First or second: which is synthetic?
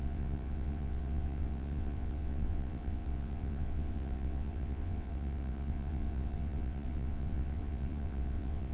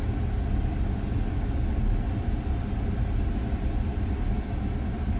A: first